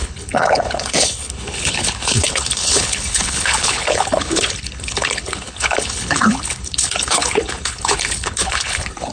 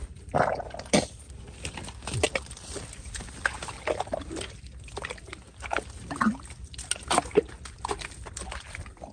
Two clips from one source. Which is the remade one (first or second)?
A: first